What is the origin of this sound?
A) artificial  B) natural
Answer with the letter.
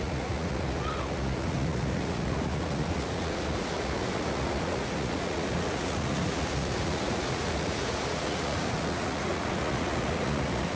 A